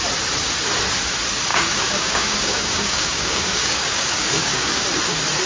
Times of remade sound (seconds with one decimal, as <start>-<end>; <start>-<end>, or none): 1.5-4.8